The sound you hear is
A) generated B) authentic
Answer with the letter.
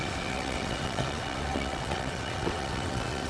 A